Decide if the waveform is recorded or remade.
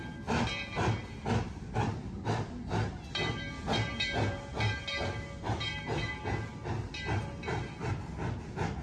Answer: recorded